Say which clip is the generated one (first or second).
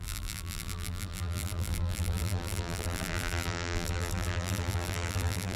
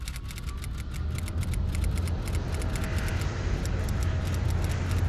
first